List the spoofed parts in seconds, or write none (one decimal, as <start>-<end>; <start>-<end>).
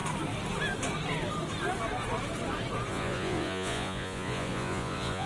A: 2.9-5.3